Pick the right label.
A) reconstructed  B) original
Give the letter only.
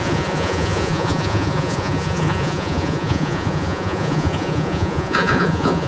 A